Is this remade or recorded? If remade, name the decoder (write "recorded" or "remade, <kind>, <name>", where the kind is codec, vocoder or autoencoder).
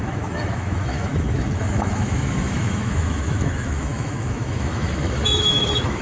remade, autoencoder, DAC-VAE